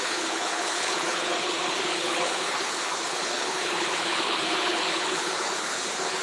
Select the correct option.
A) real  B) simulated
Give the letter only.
B